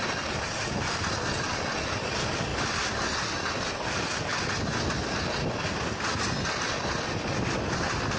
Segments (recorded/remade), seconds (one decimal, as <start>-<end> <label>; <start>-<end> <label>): 0.0-8.2 recorded

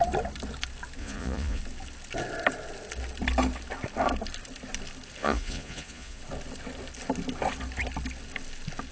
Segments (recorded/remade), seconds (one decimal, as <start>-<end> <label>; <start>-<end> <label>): 0.0-1.0 recorded; 1.0-1.6 remade; 1.6-5.2 recorded; 5.2-6.2 remade; 6.2-8.9 recorded

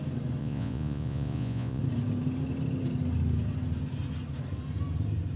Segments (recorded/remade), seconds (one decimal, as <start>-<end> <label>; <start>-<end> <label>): 0.0-0.4 recorded; 0.4-1.8 remade; 1.8-5.4 recorded

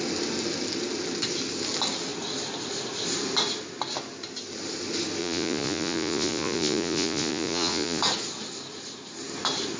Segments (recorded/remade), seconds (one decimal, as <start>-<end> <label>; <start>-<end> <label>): 0.0-5.2 recorded; 5.2-8.0 remade; 8.0-9.8 recorded

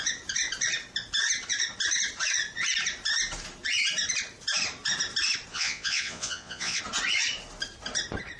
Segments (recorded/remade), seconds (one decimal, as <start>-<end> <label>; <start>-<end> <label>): 0.0-5.5 recorded; 5.5-6.8 remade; 6.8-8.4 recorded

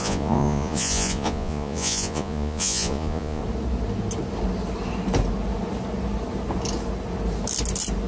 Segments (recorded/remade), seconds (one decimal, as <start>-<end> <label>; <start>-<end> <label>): 0.0-3.4 remade; 3.4-8.1 recorded